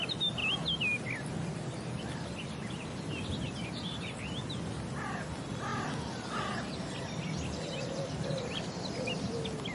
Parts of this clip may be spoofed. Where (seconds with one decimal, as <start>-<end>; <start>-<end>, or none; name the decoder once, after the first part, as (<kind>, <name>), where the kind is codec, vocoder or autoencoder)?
none